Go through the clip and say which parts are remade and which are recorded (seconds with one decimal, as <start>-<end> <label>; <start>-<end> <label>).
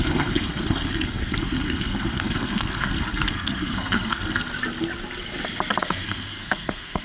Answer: 0.0-4.5 remade; 4.5-5.8 recorded; 5.8-7.0 remade